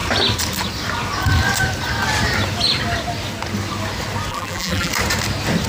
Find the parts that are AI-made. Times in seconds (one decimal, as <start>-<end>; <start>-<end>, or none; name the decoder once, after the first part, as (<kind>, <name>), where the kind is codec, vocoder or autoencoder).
4.3-4.9 (vocoder, BigVGAN v2)